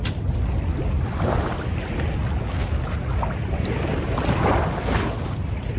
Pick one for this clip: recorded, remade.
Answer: recorded